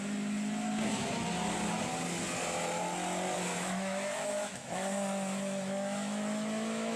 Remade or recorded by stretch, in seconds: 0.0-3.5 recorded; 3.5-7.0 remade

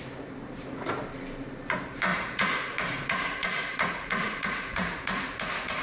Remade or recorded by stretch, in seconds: 0.0-2.1 recorded; 2.1-5.8 remade

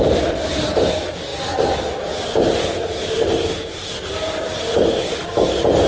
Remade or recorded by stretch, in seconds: 0.0-5.9 recorded